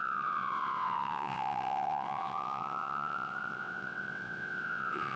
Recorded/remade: remade